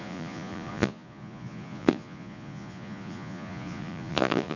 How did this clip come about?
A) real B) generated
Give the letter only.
B